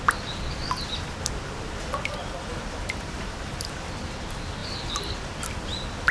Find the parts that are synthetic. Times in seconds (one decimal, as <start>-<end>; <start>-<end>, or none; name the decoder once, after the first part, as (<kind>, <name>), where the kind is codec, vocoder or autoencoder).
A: none